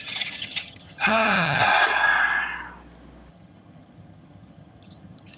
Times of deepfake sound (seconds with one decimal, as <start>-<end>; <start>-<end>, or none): 0.0-1.6; 3.3-5.4